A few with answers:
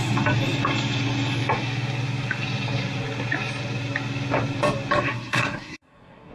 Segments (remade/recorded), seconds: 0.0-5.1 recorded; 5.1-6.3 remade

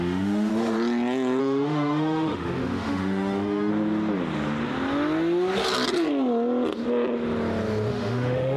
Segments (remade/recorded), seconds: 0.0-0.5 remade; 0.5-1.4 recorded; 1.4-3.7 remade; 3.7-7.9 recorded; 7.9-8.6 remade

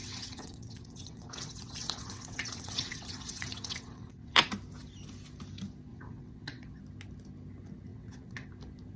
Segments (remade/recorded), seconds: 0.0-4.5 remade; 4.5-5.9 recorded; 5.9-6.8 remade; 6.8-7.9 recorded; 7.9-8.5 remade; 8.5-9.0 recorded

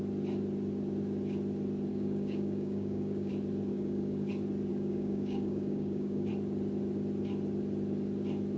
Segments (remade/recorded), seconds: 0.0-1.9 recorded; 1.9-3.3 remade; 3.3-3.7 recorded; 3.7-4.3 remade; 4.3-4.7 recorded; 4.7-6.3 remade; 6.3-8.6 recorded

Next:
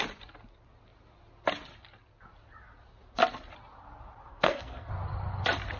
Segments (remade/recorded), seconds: 0.0-4.3 recorded; 4.3-4.9 remade; 4.9-5.8 recorded

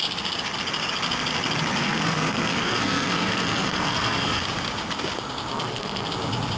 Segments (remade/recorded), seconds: 0.0-1.8 recorded; 1.8-4.4 remade; 4.4-5.5 recorded; 5.5-6.1 remade; 6.1-6.6 recorded

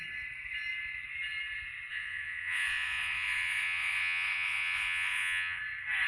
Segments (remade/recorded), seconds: 0.0-1.9 recorded; 1.9-5.6 remade; 5.6-6.1 recorded